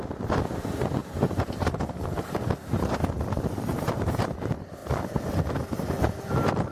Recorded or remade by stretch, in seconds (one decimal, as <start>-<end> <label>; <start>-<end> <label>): 0.0-1.0 recorded; 1.0-4.1 remade; 4.1-6.7 recorded